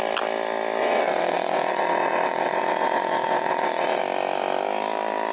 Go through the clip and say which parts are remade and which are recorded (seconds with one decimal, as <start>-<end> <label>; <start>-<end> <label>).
0.0-0.8 recorded; 0.8-4.0 remade; 4.0-5.3 recorded

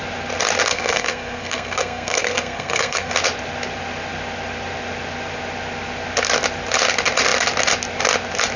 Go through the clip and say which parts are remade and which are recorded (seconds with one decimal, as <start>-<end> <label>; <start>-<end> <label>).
0.0-0.7 recorded; 0.7-3.1 remade; 3.1-8.6 recorded

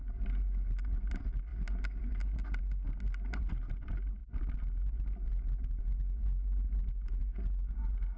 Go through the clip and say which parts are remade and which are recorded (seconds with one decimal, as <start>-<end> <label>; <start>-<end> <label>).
0.0-8.2 recorded

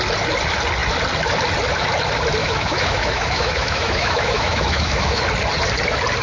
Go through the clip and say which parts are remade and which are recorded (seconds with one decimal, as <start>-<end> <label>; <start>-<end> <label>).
0.0-2.4 recorded; 2.4-5.2 remade; 5.2-6.2 recorded

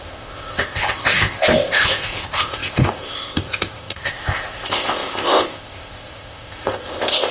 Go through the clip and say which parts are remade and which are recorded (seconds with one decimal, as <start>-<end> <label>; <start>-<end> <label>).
0.0-7.3 remade